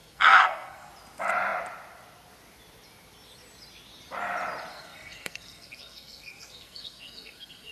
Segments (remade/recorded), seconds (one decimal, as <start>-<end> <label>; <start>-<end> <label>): 0.0-0.9 remade; 0.9-4.7 recorded; 4.7-7.7 remade